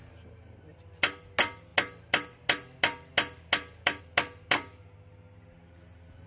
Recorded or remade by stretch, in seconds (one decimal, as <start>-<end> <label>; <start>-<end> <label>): 0.0-6.3 recorded